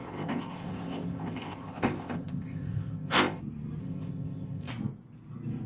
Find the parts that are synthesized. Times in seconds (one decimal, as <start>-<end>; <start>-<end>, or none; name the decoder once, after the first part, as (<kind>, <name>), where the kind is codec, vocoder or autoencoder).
0.0-3.4 (codec, ZipCodec); 3.8-4.7